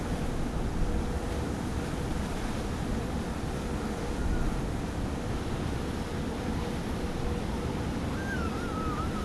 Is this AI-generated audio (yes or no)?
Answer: yes